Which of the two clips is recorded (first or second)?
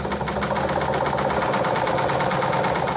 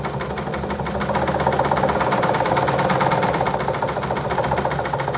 first